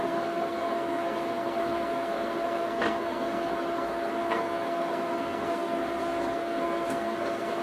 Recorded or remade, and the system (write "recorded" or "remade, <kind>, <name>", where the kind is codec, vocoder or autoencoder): remade, codec, SNAC